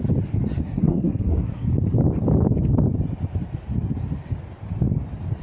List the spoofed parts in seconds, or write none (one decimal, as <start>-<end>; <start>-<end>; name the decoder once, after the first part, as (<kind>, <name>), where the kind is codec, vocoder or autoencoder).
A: 0.6-1.7 (codec, SNAC)